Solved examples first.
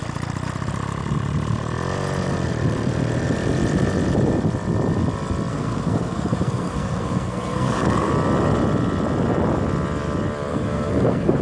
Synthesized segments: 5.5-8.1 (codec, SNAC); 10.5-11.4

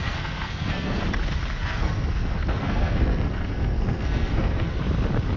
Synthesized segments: 0.0-1.0 (codec, SNAC); 1.6-4.8